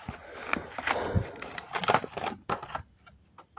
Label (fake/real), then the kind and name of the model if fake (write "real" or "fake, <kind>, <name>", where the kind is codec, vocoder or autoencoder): real